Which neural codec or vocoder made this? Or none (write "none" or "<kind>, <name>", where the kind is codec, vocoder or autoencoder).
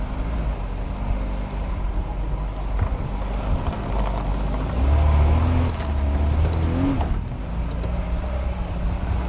none